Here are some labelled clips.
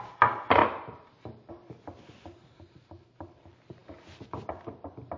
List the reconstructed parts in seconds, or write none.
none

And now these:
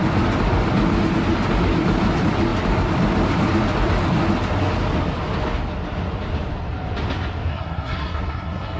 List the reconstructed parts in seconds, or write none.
7.5-8.8 (codec, SNAC)

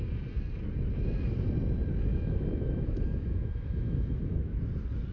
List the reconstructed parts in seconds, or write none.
2.1-4.6 (autoencoder, DAC-VAE)

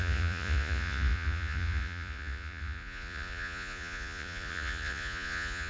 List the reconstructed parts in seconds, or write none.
0.0-5.7 (vocoder, Vocos)

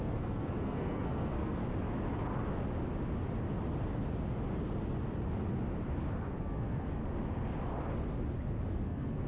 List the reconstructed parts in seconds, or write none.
0.0-1.6 (codec, SNAC); 6.4-7.0; 8.7-9.3

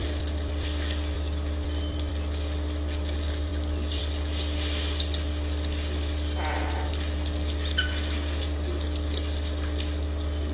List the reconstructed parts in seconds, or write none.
0.0-2.1 (vocoder, BigVGAN v2)